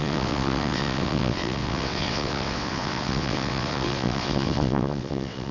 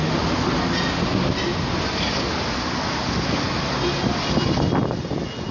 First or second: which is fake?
first